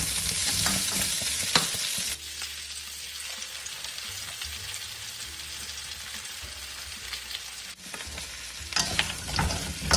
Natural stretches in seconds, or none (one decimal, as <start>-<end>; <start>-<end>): 0.0-10.0